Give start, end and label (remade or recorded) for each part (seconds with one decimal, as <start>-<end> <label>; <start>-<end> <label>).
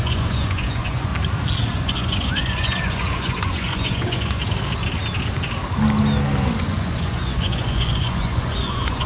0.0-1.1 remade; 1.1-1.7 recorded; 1.7-4.4 remade; 4.4-6.6 recorded; 6.6-9.1 remade